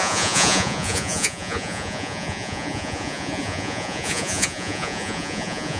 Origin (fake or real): fake